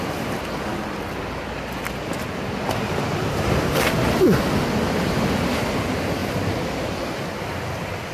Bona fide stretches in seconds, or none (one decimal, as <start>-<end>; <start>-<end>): 0.0-8.1